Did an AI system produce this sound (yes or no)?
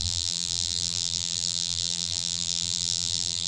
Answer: yes